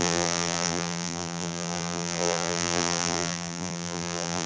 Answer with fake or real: fake